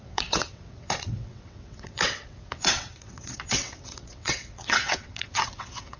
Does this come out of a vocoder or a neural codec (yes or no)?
yes